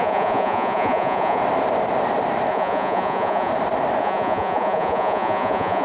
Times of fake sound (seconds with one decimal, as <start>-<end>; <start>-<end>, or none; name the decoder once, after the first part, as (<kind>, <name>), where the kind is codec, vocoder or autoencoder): 0.0-1.4 (vocoder, Vocos); 2.5-3.5; 4.0-5.8